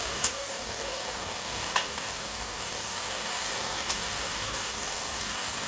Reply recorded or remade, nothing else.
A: remade